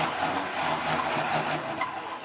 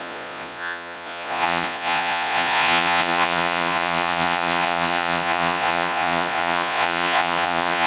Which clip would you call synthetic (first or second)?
second